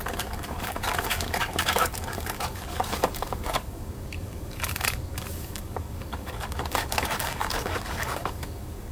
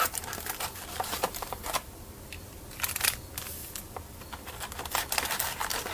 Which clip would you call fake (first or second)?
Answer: first